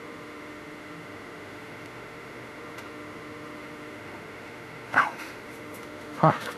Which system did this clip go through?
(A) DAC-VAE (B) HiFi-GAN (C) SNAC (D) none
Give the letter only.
A